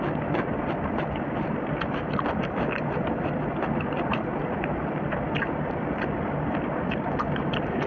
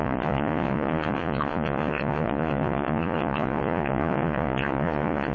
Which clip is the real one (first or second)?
first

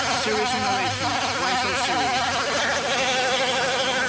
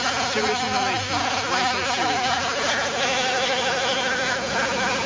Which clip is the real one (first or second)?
first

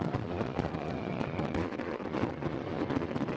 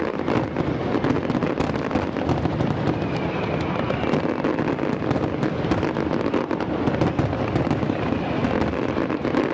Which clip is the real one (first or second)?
second